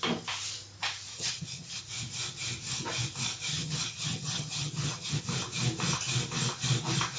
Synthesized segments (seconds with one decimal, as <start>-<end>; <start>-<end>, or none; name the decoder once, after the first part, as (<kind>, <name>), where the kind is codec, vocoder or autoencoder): 1.1-1.8 (vocoder, HiFi-GAN); 3.5-5.2